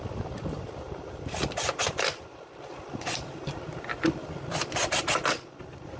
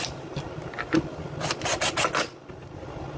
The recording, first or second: second